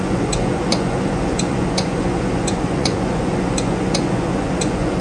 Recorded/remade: remade